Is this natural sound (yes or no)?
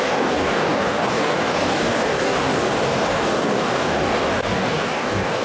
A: no